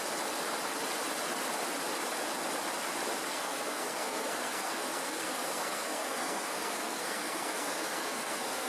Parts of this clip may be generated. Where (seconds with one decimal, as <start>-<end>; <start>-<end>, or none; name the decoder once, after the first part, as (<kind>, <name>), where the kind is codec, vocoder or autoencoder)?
3.3-8.7 (codec, SNAC)